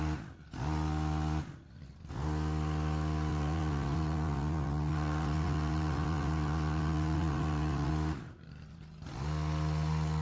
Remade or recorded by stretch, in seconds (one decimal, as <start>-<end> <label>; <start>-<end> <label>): 0.0-3.3 recorded; 3.3-7.9 remade; 7.9-10.2 recorded